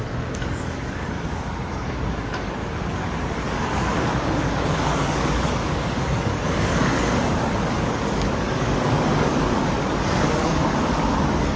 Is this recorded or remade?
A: remade